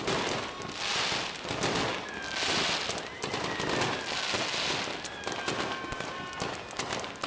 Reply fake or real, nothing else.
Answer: real